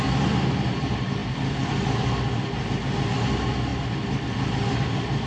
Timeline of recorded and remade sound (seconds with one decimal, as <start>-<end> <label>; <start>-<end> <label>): 0.0-5.3 recorded